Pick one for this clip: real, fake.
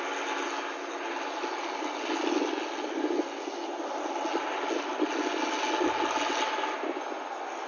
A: real